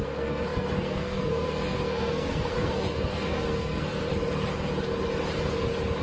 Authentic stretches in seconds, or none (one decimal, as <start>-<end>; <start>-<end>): 4.0-6.0